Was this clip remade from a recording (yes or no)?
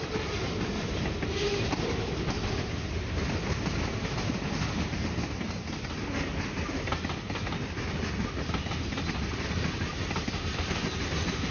no